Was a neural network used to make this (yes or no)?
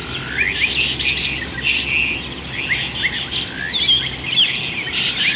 no